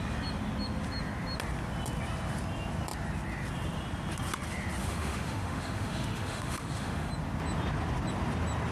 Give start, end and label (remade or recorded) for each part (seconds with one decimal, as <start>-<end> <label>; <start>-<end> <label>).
0.0-4.8 recorded; 4.8-7.1 remade; 7.1-8.7 recorded

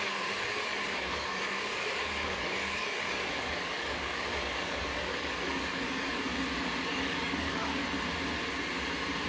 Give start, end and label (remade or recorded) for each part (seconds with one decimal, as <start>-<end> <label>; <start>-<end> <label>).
0.0-6.3 remade; 6.3-6.9 recorded; 6.9-7.8 remade; 7.8-9.3 recorded